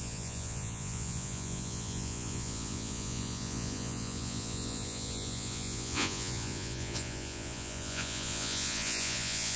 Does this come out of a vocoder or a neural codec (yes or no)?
yes